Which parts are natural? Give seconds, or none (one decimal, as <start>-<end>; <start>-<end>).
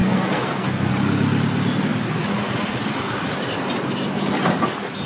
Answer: 0.9-5.1